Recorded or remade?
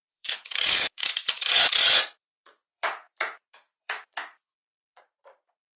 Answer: remade